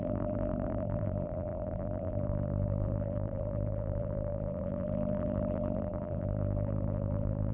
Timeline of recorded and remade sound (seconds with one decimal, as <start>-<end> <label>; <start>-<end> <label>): 0.0-7.5 remade